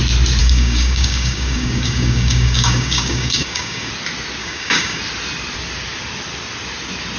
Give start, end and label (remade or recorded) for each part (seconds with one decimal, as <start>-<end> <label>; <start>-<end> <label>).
0.0-0.4 recorded; 0.4-3.9 remade; 3.9-4.4 recorded; 4.4-5.0 remade; 5.0-7.2 recorded